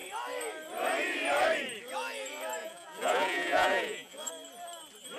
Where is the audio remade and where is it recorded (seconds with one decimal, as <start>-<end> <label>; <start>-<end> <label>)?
0.0-2.6 recorded; 2.6-4.3 remade; 4.3-5.2 recorded